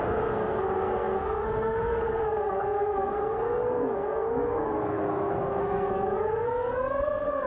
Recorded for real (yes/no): no